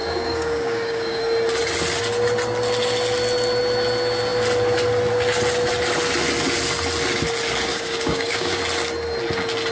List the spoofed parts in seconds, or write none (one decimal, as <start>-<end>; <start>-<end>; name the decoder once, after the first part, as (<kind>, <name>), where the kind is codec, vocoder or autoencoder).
0.0-1.2 (codec, DAC); 7.7-8.6